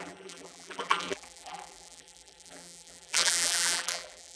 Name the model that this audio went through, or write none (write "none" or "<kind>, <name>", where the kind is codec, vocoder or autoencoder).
vocoder, BigVGAN v2